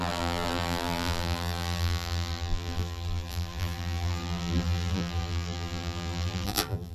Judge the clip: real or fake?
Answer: fake